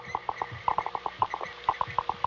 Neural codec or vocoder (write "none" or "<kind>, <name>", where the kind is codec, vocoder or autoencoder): none